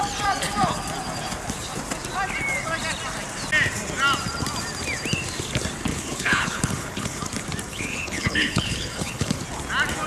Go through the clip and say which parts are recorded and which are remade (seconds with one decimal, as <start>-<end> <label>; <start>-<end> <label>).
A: 0.0-5.9 recorded; 5.9-7.2 remade; 7.2-7.7 recorded; 7.7-9.4 remade; 9.4-10.1 recorded